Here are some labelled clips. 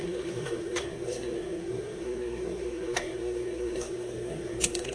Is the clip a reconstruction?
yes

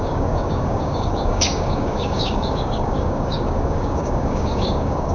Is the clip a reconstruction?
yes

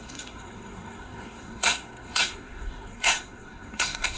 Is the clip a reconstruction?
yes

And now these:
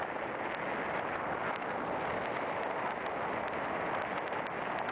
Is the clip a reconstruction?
no